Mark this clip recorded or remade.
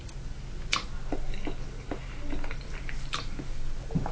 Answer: recorded